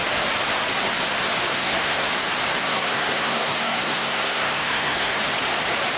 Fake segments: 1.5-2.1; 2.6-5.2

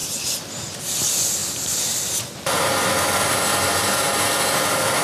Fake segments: none

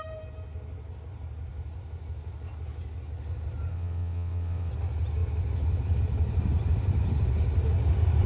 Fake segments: 3.7-4.7

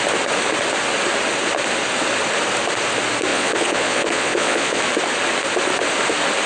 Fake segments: 3.3-4.8

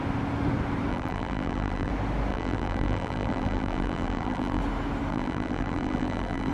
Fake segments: 0.9-1.9; 2.3-4.6; 5.1-6.5

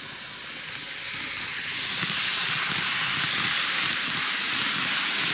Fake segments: 2.0-4.2

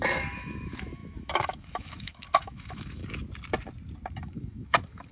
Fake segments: 0.0-3.0; 4.2-5.1